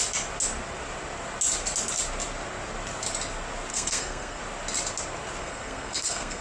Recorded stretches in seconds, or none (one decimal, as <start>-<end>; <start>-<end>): 0.0-3.7; 4.4-5.4